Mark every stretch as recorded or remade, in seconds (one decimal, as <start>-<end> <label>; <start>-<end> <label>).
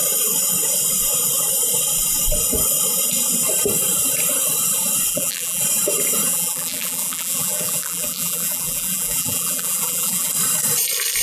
0.0-5.1 recorded; 5.1-5.6 remade; 5.6-6.3 recorded; 6.3-10.3 remade; 10.3-11.2 recorded